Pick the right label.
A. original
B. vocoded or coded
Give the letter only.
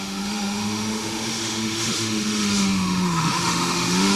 B